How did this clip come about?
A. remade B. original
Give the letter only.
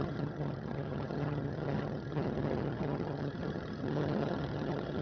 A